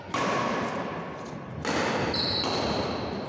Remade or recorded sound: recorded